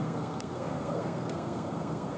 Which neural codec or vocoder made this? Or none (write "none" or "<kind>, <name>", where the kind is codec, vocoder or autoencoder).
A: codec, SNAC